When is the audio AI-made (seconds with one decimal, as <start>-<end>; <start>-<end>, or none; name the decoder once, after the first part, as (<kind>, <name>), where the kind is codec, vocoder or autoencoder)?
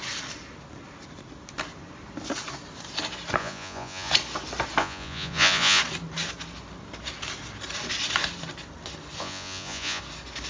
3.4-4.1 (vocoder, Vocos); 4.8-5.8; 9.2-10.0